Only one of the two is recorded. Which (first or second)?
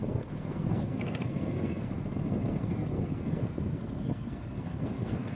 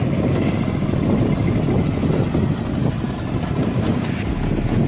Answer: second